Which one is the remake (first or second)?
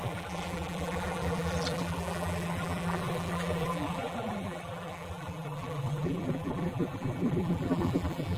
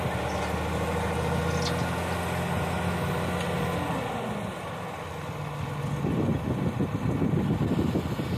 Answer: first